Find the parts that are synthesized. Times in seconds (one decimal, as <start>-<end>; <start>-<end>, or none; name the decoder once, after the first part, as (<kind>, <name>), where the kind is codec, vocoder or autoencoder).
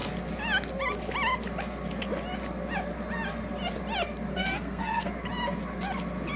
4.3-5.1 (codec, SNAC)